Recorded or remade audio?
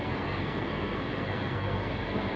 remade